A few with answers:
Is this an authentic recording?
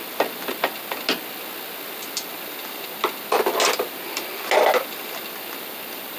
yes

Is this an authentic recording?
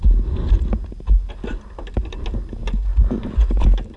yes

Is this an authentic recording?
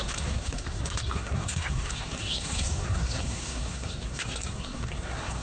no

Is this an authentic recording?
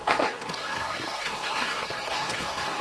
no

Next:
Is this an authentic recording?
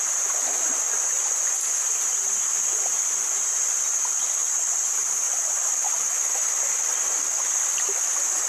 yes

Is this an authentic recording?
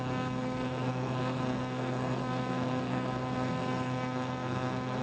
no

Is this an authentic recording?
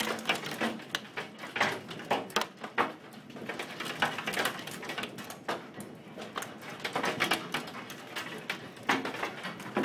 yes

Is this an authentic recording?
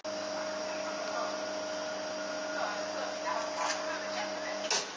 yes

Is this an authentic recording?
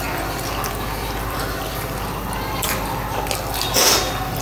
yes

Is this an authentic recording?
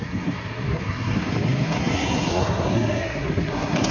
no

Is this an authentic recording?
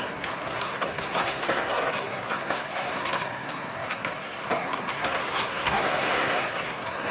no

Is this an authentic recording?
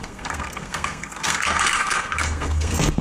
no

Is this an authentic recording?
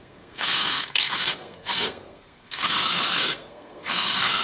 no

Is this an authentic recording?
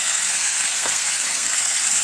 no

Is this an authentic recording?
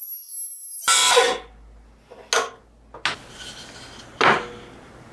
yes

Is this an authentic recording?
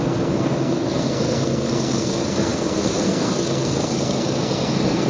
no